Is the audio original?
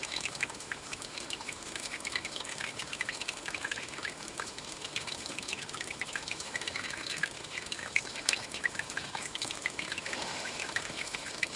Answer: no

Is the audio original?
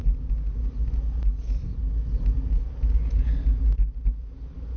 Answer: yes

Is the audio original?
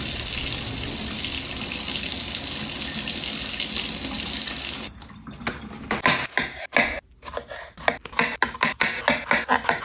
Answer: yes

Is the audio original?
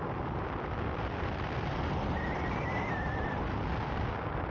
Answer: yes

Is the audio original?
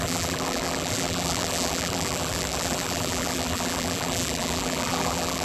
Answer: no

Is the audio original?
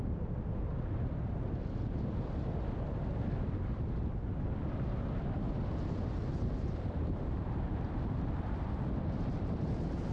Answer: yes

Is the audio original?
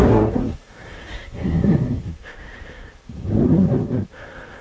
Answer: no